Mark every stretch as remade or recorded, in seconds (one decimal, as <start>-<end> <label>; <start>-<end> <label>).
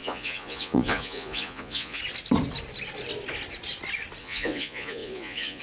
0.0-2.0 remade; 2.0-4.2 recorded; 4.2-5.6 remade